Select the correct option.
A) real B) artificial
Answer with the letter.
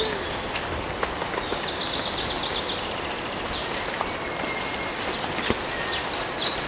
A